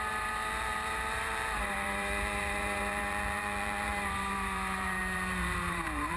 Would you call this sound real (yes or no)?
no